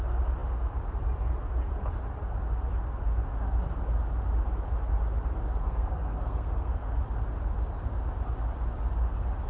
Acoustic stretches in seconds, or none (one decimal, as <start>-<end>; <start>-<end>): 0.0-5.6; 7.0-9.5